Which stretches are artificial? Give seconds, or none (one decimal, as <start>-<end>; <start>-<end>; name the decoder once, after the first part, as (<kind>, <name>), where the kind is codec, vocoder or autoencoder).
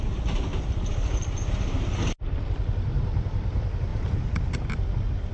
0.5-1.5 (vocoder, BigVGAN v2); 3.9-4.7